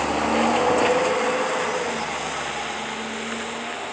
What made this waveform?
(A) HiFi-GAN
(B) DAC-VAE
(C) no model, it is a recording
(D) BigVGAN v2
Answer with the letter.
C